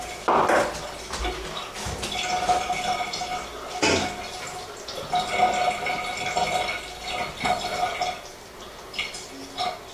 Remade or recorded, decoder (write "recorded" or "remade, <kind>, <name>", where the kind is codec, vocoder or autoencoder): recorded